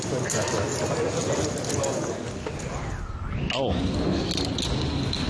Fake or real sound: real